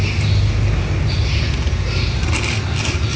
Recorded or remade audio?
recorded